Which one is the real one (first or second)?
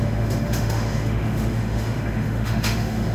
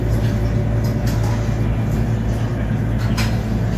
second